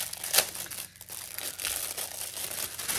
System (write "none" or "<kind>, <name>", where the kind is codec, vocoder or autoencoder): none